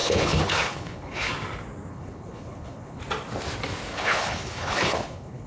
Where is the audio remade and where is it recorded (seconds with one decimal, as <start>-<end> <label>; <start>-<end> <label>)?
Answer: 0.0-1.3 remade; 1.3-1.9 recorded; 1.9-3.0 remade; 3.0-3.9 recorded; 3.9-5.5 remade